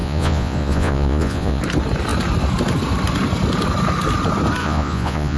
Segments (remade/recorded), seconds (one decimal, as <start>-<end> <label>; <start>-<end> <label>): 0.0-1.6 remade; 1.6-4.6 recorded; 4.6-5.4 remade